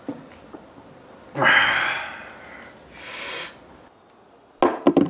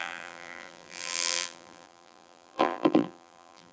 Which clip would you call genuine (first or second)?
first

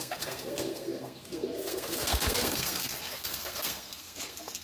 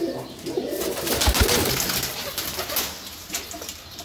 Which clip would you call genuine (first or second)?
second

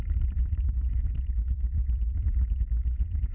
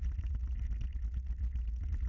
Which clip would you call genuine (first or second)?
second